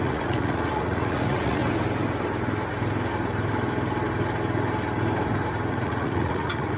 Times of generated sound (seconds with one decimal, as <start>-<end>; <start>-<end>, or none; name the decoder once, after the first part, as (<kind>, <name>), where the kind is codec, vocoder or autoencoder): 0.0-1.6 (vocoder, Vocos); 5.7-6.8